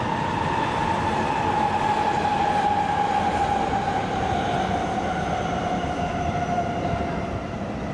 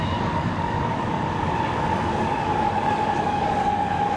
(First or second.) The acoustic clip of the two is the first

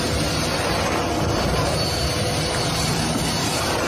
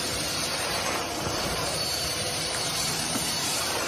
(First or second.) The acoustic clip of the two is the first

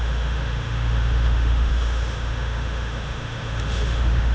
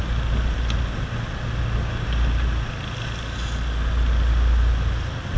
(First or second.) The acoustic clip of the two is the second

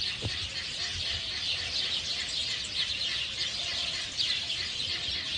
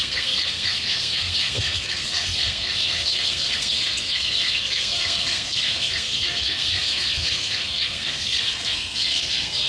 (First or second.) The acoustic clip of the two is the first